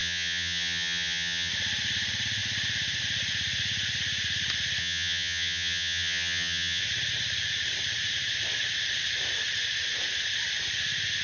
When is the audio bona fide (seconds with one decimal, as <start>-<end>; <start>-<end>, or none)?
1.5-4.8; 6.8-11.2